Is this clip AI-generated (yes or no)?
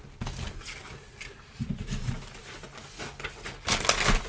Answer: no